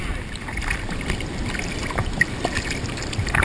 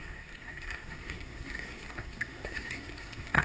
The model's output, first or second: second